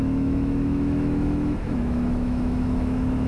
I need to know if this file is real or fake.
fake